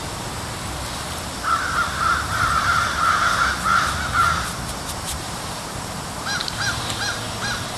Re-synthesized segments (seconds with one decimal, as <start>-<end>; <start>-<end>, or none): 4.2-6.9